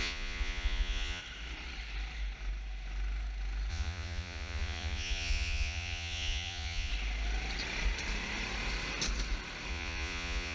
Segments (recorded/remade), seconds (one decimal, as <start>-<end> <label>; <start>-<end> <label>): 0.0-1.2 remade; 1.2-3.7 recorded; 3.7-6.9 remade; 6.9-9.7 recorded; 9.7-10.5 remade